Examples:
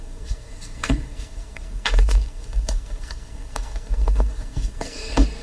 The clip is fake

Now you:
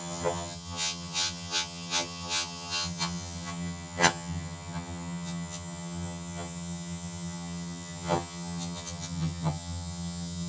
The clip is fake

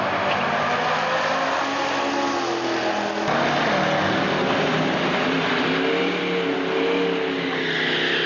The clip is real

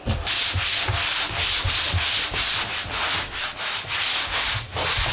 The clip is real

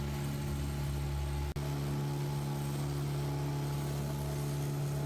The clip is real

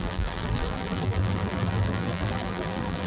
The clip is fake